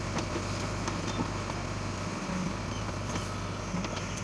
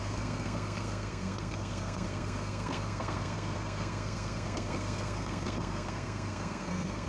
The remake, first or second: second